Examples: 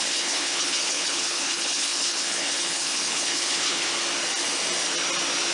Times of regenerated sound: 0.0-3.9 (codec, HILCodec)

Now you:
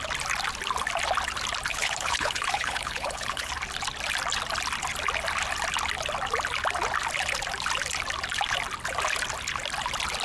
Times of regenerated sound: 1.7-3.5 (codec, HILCodec)

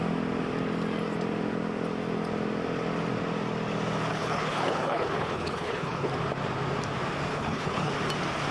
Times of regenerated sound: 4.1-6.1 (codec, HILCodec); 7.3-7.9